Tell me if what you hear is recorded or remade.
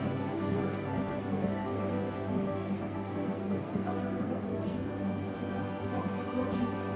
remade